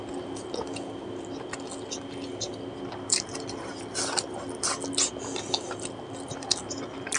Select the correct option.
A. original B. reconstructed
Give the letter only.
A